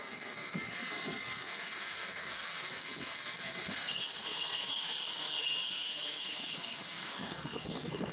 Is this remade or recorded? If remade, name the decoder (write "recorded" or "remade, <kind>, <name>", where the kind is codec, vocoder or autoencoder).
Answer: remade, codec, SNAC